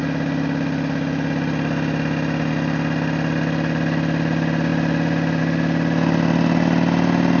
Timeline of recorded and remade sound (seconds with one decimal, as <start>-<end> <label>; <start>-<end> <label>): 0.0-7.4 recorded